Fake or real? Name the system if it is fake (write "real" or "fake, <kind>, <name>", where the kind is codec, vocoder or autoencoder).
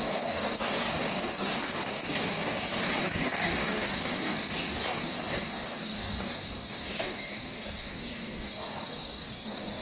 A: fake, codec, DAC